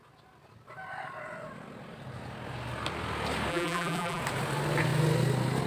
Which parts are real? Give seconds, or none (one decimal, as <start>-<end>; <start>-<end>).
0.0-3.5; 4.2-5.7